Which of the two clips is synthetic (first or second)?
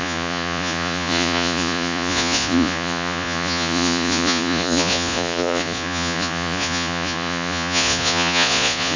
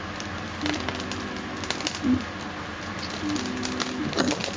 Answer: first